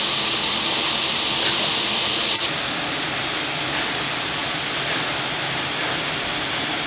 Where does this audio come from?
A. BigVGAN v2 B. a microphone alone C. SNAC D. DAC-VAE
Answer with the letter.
B